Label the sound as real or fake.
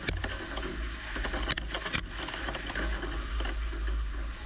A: real